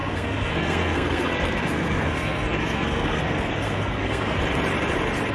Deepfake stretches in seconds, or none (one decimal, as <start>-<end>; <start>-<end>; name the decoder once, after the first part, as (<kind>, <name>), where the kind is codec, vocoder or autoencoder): 0.0-4.4 (codec, SNAC)